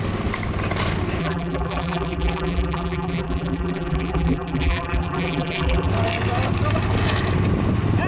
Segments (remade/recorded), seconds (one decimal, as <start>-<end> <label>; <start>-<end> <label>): 0.0-1.2 recorded; 1.2-5.9 remade; 5.9-8.1 recorded